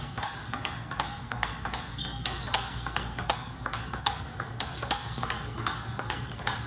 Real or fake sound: fake